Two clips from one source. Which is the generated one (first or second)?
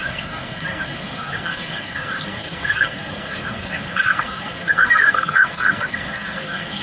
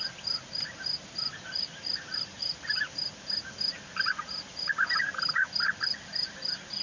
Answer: first